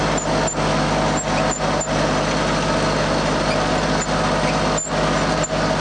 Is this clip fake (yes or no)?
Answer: no